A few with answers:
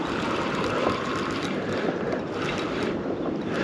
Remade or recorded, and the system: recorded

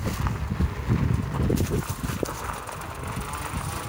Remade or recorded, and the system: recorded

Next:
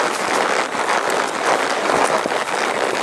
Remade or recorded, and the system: recorded